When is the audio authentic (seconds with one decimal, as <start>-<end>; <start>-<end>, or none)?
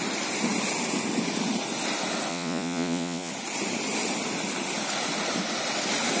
0.0-2.3; 3.3-6.2